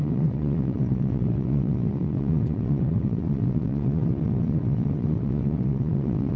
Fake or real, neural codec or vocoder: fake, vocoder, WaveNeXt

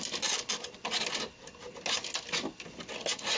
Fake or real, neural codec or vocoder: real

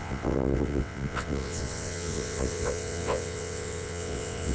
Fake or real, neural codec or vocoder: fake, vocoder, WaveNeXt